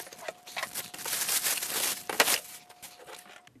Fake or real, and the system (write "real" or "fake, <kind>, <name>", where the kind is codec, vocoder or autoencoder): real